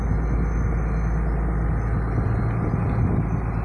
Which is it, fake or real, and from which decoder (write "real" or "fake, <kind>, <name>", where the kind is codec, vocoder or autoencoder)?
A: real